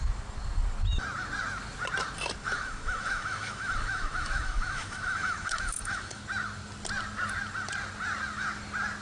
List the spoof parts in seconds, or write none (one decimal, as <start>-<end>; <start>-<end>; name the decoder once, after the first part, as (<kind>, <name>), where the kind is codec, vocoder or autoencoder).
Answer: 2.4-6.2 (autoencoder, DAC-VAE)